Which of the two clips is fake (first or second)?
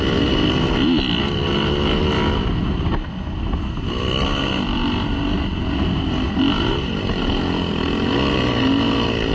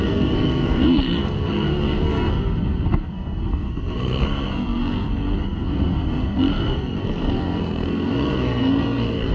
second